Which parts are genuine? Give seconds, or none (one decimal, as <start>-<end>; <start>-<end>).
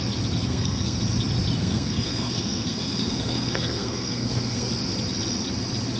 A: 0.0-0.4; 1.0-1.6; 4.7-6.0